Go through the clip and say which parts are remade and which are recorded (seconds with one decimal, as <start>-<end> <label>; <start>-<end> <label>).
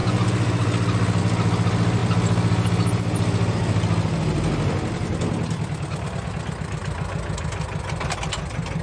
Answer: 0.0-8.8 recorded